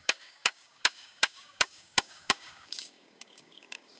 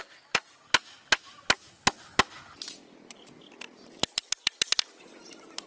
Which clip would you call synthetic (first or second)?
first